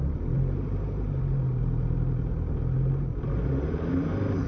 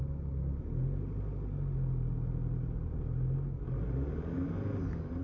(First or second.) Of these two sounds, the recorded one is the second